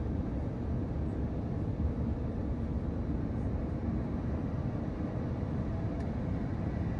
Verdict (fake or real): real